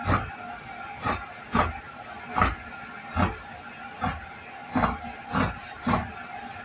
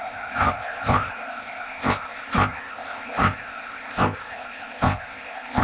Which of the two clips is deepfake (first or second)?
second